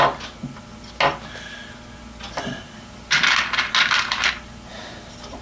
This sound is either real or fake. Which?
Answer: real